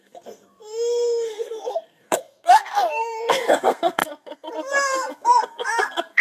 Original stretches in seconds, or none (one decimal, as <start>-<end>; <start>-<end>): none